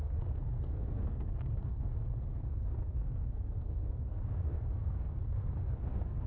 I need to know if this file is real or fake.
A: fake